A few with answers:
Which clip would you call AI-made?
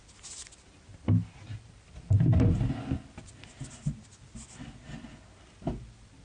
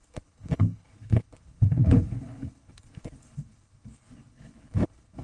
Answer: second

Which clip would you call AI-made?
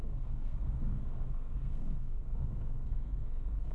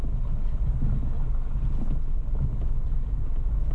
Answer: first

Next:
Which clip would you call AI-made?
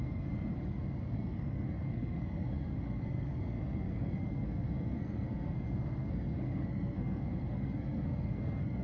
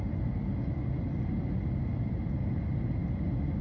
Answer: first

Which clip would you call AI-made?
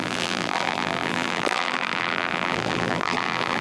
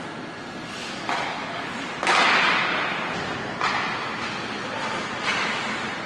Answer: first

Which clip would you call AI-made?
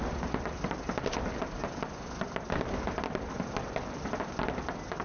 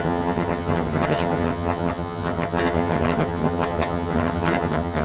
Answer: second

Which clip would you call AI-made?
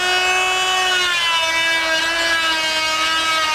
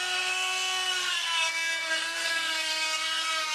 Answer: second